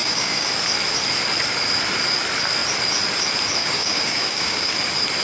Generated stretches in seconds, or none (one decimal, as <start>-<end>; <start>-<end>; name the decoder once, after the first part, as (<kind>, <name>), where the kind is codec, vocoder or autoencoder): 0.0-0.5 (codec, DAC); 3.6-4.7